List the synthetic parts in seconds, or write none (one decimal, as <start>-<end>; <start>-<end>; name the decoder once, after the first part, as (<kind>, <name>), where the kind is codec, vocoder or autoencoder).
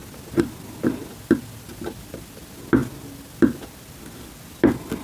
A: 0.0-1.0 (vocoder, BigVGAN v2); 2.8-4.0